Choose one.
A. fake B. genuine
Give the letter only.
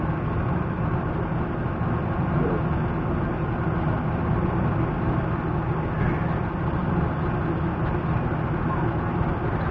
B